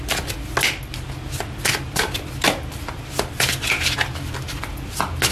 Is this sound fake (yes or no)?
no